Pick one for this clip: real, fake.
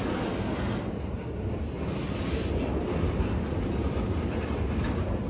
real